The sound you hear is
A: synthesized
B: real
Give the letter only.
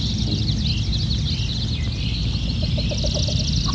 B